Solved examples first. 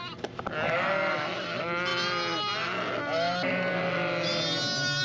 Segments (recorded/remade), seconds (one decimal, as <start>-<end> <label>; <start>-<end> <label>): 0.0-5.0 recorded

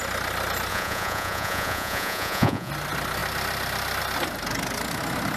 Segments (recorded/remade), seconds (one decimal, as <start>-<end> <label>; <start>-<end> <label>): 0.0-0.7 recorded; 0.7-2.7 remade; 2.7-5.4 recorded

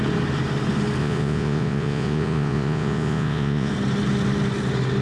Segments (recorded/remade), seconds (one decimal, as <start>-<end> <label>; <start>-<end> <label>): 0.0-1.0 recorded; 1.0-3.7 remade; 3.7-5.0 recorded

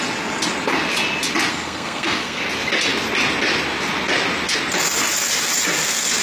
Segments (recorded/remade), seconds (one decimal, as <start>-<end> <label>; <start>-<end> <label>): 0.0-1.5 recorded; 1.5-2.4 remade; 2.4-6.2 recorded

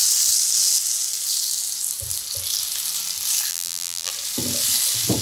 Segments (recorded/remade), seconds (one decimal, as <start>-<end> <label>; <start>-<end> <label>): 0.0-3.5 recorded; 3.5-4.1 remade; 4.1-5.2 recorded